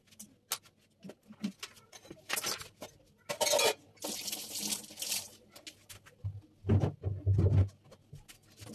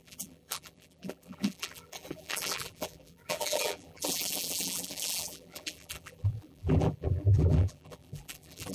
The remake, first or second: second